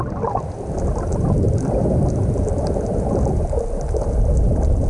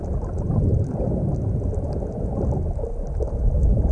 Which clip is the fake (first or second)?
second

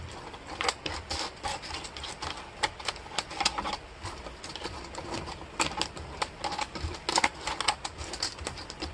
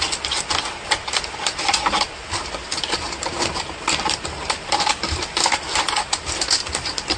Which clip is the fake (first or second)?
second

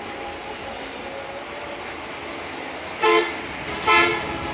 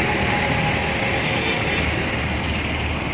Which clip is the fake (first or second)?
second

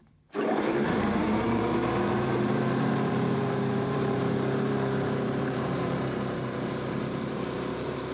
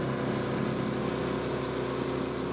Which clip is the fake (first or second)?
first